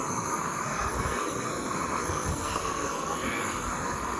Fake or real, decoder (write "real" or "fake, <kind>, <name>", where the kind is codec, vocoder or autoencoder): fake, codec, SNAC